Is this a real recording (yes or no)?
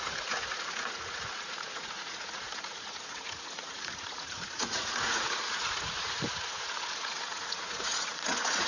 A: no